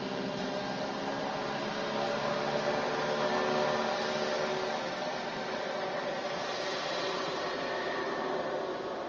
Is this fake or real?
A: real